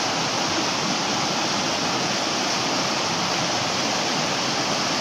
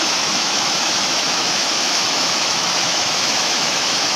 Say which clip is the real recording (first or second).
first